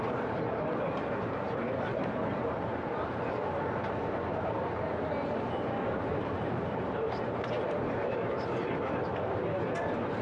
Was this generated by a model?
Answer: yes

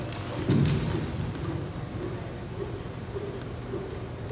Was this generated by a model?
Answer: no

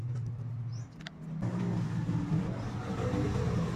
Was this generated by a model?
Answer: no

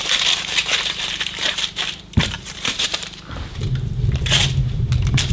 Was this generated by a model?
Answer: yes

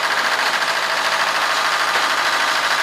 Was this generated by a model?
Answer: yes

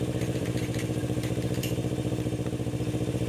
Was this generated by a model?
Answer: yes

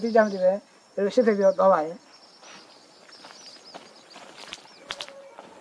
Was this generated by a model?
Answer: no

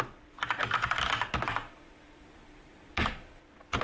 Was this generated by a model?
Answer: no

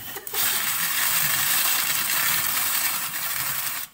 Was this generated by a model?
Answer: no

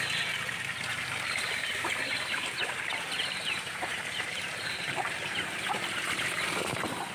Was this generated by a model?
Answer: yes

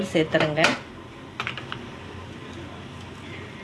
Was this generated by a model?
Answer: no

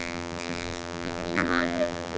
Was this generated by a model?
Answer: yes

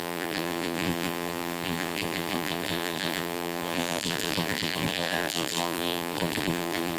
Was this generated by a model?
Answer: yes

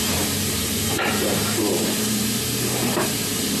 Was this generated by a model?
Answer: yes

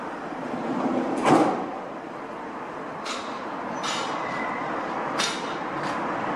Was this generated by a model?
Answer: no